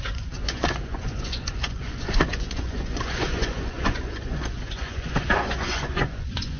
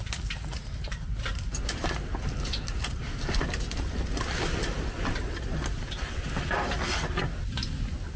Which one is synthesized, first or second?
first